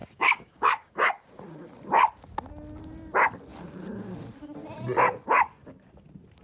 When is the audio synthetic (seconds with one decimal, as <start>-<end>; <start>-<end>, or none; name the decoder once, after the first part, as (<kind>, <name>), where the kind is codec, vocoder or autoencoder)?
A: 0.0-1.3 (codec, DAC)